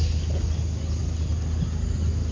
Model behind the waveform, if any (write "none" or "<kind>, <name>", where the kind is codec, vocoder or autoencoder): none